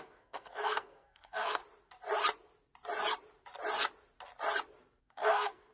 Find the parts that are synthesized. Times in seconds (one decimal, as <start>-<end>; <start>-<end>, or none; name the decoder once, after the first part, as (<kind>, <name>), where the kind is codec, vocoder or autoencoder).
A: 0.0-1.6 (codec, SNAC); 5.0-5.7